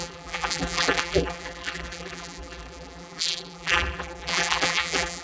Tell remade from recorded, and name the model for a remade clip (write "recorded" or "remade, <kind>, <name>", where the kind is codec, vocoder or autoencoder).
remade, vocoder, BigVGAN v2